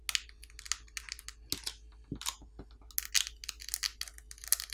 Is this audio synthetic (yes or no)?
no